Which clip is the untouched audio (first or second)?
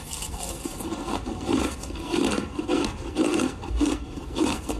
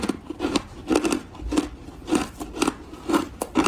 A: second